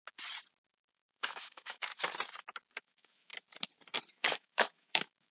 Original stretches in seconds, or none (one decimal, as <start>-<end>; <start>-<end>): 0.0-0.7; 1.9-2.8; 3.3-4.1